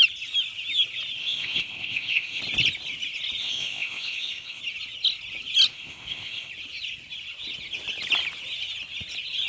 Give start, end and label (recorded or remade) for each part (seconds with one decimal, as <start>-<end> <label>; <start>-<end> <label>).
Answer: 0.0-1.2 recorded; 1.2-2.4 remade; 2.4-3.4 recorded; 3.4-4.6 remade; 4.6-5.7 recorded; 5.7-6.5 remade; 6.5-9.5 recorded